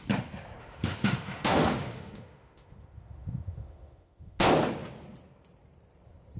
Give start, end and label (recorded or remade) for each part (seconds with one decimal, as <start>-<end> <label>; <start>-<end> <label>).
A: 0.0-0.6 recorded; 0.6-4.4 remade; 4.4-6.4 recorded